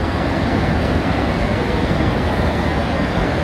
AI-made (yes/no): yes